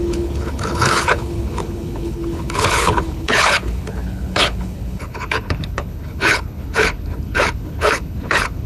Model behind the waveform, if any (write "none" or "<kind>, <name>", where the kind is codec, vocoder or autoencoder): codec, HILCodec